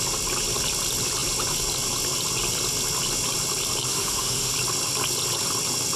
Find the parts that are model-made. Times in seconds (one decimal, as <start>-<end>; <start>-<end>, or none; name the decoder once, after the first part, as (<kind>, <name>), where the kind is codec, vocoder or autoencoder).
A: 3.9-4.5 (autoencoder, DAC-VAE)